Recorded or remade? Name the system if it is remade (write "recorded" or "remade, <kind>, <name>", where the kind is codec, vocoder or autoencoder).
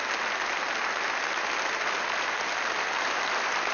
recorded